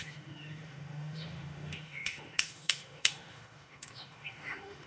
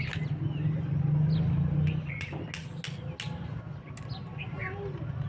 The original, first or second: second